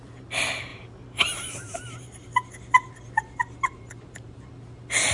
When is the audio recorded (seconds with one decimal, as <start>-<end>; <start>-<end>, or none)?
0.0-0.7; 2.5-3.4; 4.5-5.1